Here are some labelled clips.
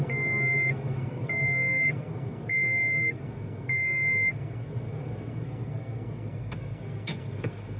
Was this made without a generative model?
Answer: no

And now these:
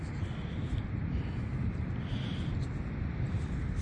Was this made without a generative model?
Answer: yes